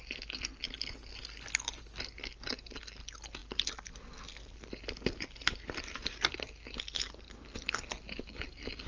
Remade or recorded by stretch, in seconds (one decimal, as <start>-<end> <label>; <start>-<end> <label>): 0.0-8.9 recorded